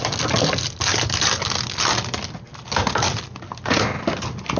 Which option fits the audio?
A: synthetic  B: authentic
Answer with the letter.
B